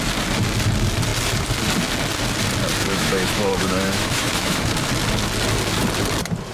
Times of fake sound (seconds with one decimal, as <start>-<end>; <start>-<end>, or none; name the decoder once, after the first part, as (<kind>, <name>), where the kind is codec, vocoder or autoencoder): 2.8-4.7 (autoencoder, DAC-VAE)